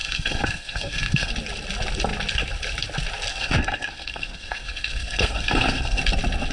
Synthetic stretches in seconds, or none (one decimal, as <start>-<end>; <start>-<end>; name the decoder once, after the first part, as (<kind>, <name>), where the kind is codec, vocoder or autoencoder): 0.0-1.3 (codec, SNAC); 3.3-6.0